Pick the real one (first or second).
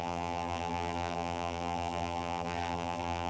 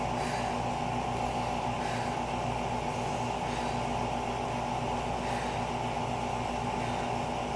second